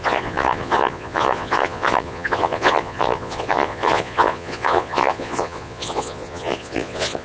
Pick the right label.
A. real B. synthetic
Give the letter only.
B